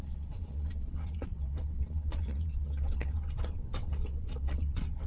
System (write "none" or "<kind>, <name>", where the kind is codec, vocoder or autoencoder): vocoder, WaveNeXt